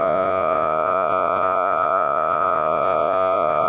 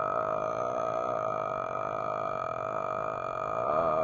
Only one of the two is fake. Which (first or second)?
first